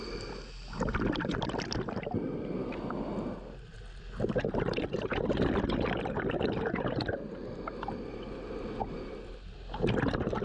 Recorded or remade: recorded